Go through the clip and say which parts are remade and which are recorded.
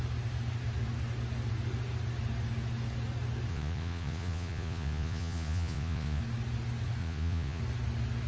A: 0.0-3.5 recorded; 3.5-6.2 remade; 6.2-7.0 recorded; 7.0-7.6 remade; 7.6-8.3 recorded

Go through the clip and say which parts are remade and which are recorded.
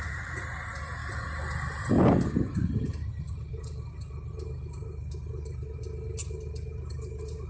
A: 0.0-7.5 recorded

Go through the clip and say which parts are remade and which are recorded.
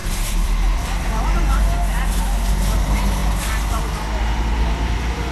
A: 0.0-1.4 remade; 1.4-3.2 recorded; 3.2-3.8 remade; 3.8-5.3 recorded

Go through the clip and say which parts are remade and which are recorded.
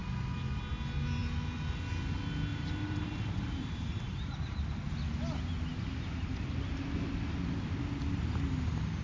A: 0.0-2.5 recorded; 2.5-4.8 remade; 4.8-9.0 recorded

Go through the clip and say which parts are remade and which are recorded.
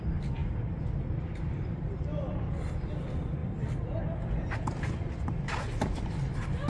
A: 0.0-6.7 recorded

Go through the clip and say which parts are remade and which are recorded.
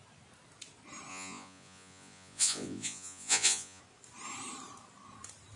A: 0.0-1.1 recorded; 1.1-3.8 remade; 3.8-5.6 recorded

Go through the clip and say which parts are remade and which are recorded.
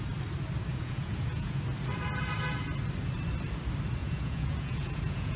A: 0.0-0.7 recorded; 0.7-1.6 remade; 1.6-4.0 recorded; 4.0-5.4 remade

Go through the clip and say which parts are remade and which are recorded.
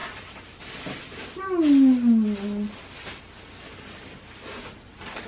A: 0.0-5.3 recorded